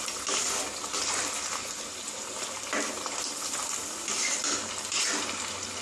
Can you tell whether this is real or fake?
real